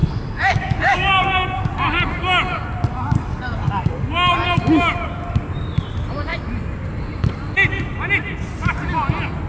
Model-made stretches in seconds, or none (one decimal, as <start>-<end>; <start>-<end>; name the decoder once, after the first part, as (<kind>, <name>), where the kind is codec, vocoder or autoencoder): 0.0-1.7 (codec, DAC); 2.9-4.1

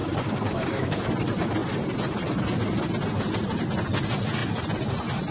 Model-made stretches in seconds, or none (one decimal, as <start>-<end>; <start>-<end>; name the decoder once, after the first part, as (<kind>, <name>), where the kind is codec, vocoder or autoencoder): 0.0-1.0 (codec, DAC)

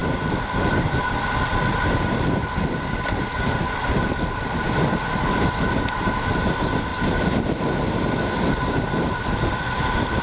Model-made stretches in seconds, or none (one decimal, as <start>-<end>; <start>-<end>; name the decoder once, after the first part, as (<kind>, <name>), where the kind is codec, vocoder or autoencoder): none

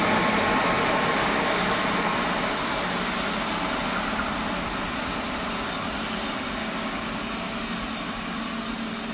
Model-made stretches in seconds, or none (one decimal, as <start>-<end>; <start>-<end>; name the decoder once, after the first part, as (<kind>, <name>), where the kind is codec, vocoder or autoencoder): 1.2-1.8 (codec, DAC); 6.6-7.2

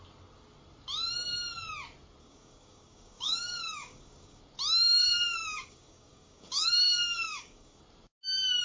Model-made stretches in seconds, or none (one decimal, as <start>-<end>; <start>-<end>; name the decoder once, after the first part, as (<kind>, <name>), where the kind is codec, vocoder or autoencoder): 2.2-4.4 (codec, DAC); 5.0-7.8